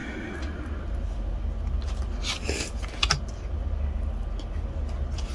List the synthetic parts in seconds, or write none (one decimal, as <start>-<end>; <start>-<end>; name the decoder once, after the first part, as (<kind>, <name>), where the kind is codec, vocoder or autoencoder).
none